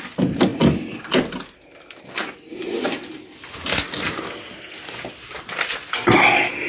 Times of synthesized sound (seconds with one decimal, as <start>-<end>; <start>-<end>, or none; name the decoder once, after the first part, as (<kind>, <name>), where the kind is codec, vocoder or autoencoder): none